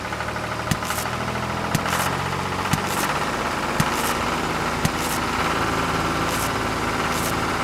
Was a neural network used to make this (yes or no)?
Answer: yes